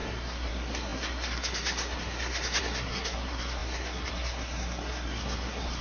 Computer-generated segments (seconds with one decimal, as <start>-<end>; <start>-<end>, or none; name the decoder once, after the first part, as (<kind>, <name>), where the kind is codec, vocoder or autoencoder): 0.0-5.8 (codec, SNAC)